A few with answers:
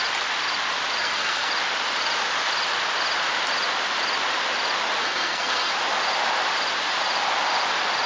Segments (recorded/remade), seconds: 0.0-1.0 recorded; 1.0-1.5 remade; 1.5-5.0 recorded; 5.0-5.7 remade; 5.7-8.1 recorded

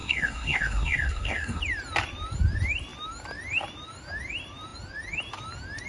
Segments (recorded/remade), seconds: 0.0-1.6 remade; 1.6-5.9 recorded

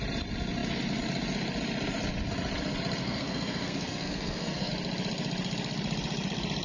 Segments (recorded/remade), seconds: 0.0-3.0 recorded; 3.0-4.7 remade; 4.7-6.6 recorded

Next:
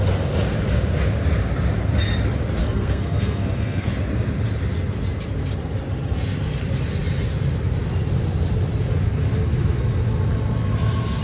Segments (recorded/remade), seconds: 0.0-2.6 recorded; 2.6-3.9 remade; 3.9-11.2 recorded

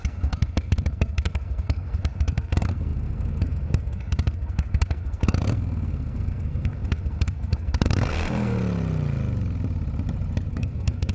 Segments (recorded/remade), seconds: 0.0-8.6 remade; 8.6-10.5 recorded; 10.5-11.1 remade